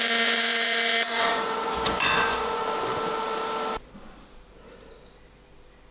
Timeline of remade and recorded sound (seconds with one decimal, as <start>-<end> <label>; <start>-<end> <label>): 0.0-2.6 remade; 2.6-5.9 recorded